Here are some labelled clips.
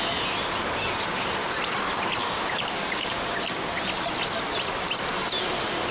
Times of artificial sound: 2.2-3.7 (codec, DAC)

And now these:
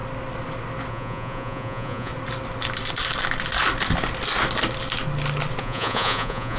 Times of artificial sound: 0.9-2.1 (vocoder, Vocos); 5.6-6.6

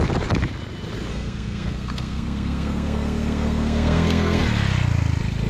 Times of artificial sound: 1.1-4.4 (codec, SNAC)

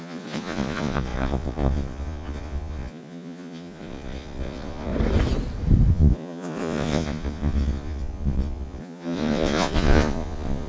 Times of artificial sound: 0.0-4.9 (vocoder, Vocos); 5.9-10.7

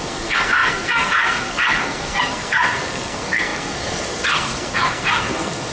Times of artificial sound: 0.0-5.7 (codec, SNAC)

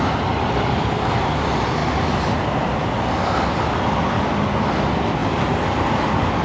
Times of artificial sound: 1.8-2.8 (vocoder, BigVGAN v2); 5.2-6.0